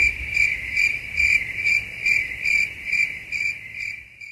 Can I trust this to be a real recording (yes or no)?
no